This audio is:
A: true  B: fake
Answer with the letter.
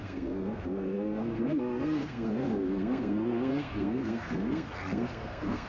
B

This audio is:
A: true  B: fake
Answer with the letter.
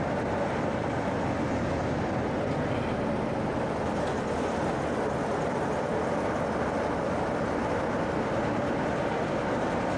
A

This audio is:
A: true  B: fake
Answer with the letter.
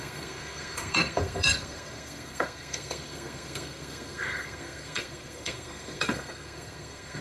B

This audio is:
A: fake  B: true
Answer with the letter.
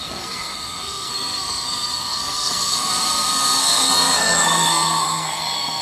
A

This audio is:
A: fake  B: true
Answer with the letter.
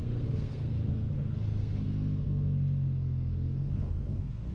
A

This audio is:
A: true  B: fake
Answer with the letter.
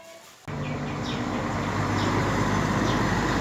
A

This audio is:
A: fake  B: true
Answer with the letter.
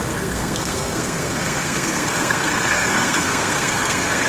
A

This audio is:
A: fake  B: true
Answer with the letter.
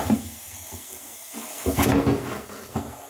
A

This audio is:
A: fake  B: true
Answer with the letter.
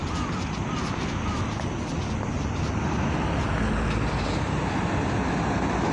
B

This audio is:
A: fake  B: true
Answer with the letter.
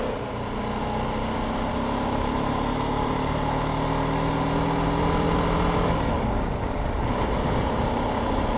B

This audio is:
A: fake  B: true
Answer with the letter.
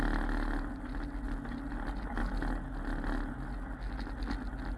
B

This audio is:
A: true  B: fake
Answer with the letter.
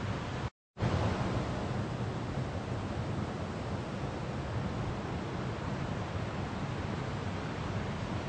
A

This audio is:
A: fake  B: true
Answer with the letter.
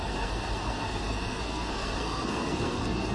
A